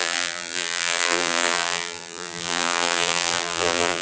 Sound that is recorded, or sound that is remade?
remade